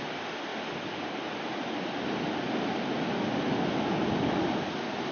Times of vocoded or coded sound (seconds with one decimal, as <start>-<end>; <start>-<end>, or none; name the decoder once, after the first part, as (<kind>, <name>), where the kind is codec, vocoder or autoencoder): none